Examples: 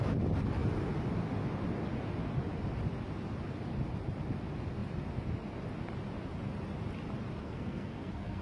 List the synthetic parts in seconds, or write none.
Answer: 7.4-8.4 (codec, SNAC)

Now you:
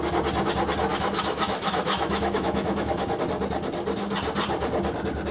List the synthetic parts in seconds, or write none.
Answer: 0.9-3.2 (autoencoder, DAC-VAE)

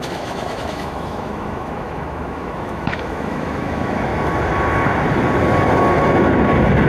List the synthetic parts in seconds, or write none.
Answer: 0.0-4.1 (autoencoder, DAC-VAE)

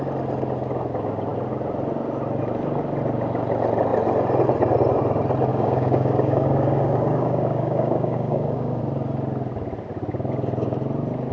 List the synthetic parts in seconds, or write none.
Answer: 5.5-8.8 (codec, DAC)

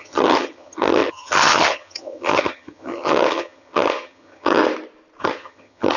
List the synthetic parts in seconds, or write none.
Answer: 0.0-4.6 (vocoder, HiFi-GAN); 5.2-6.0

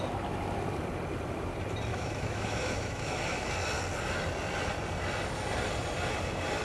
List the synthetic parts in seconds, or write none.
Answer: 1.9-3.5 (autoencoder, DAC-VAE)